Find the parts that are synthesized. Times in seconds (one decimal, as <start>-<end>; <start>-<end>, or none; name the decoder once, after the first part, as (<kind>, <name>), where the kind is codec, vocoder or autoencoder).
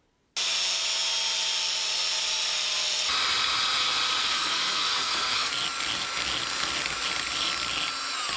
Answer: 4.2-5.5 (codec, SNAC)